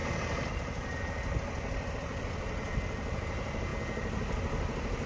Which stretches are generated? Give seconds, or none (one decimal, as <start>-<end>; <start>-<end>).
none